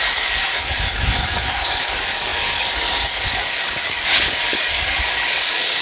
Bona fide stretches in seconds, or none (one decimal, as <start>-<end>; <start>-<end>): none